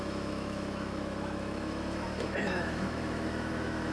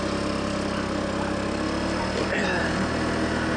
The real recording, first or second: second